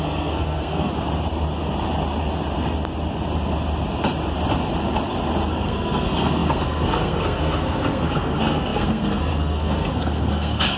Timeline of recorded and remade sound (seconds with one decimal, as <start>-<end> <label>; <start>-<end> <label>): 0.0-0.9 remade; 0.9-5.5 recorded; 5.5-10.8 remade